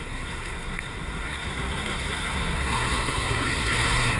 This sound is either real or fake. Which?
fake